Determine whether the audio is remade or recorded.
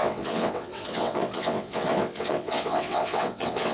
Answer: remade